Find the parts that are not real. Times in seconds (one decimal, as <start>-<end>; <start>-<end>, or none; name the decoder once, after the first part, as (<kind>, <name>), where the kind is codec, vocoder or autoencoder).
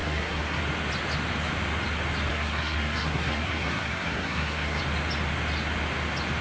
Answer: 0.0-0.6 (codec, SNAC); 2.3-4.8